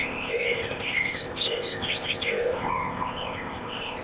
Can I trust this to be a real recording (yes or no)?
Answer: no